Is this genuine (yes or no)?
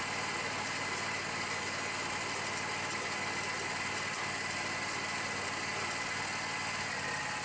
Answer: yes